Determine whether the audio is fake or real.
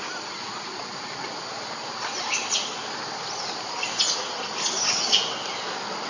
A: real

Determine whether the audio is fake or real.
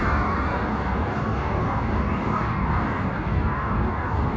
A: fake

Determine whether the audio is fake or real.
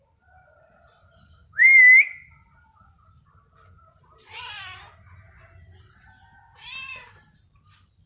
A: real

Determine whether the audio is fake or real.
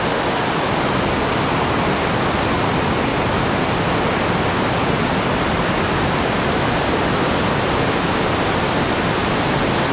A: real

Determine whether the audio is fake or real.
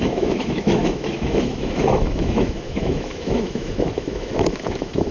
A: fake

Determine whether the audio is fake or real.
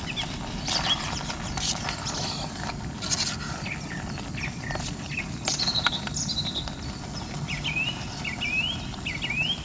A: real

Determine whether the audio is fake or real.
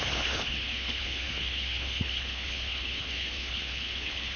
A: fake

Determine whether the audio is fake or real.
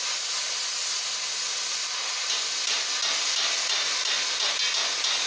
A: real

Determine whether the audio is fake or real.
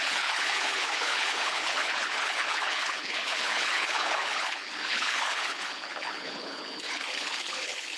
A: fake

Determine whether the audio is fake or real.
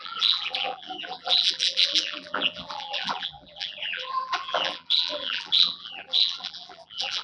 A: fake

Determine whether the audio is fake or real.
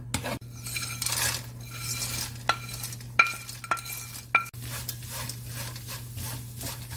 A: real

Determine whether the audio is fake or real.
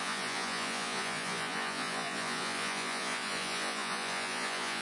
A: fake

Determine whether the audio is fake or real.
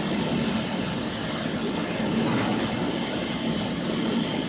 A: real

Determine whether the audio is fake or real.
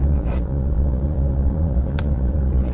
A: fake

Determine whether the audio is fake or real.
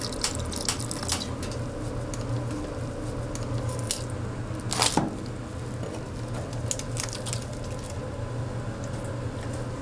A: real